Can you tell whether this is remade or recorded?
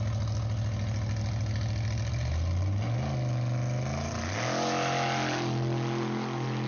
recorded